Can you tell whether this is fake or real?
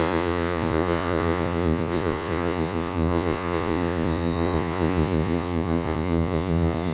fake